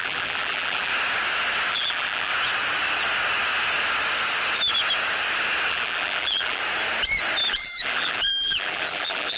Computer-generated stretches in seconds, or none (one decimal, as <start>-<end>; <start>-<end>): 0.0-0.9; 1.7-2.3; 5.7-6.6; 7.5-9.4